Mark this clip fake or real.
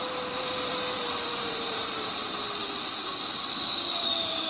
fake